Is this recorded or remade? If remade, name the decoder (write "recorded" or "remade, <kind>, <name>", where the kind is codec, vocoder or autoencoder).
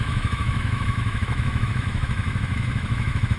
remade, autoencoder, DAC-VAE